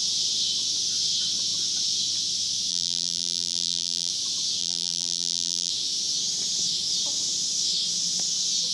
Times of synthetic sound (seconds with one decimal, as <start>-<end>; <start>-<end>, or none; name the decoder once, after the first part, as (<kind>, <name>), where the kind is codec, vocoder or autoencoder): 2.7-4.1 (vocoder, BigVGAN v2); 4.6-5.7